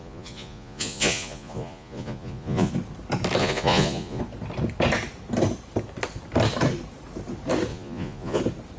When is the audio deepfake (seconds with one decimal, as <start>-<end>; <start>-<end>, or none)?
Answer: 0.0-2.7; 3.4-4.2; 7.7-8.4